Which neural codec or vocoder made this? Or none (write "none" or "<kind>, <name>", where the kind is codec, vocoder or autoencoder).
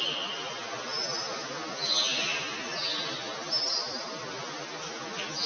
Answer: none